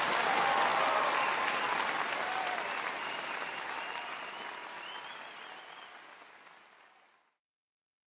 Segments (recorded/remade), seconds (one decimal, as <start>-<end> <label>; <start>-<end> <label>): 0.0-0.7 recorded; 0.7-5.6 remade; 5.6-8.1 recorded